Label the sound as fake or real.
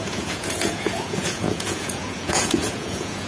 fake